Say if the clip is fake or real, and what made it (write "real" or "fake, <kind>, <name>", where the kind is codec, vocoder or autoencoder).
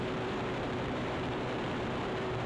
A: fake, vocoder, BigVGAN v2